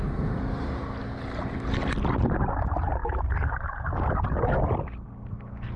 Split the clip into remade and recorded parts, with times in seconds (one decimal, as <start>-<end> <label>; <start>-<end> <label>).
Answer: 0.0-5.8 recorded